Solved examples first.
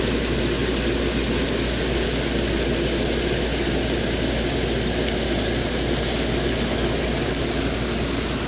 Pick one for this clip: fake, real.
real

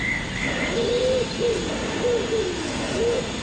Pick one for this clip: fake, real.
real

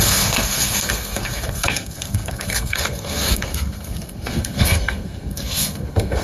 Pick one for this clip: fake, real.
fake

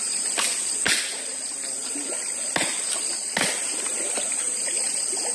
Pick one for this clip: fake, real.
fake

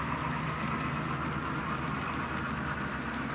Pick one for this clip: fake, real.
real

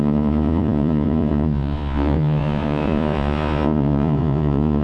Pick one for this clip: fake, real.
fake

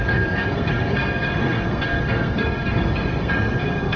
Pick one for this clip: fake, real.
fake